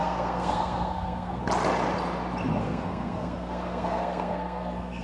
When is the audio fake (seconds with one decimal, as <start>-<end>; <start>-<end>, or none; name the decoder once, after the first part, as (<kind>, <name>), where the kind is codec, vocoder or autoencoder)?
0.0-1.4 (codec, SNAC); 2.6-5.0